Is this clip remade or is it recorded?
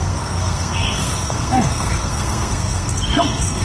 remade